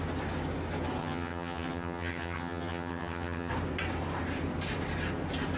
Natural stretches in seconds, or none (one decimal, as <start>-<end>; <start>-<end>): 0.0-1.0; 3.5-5.6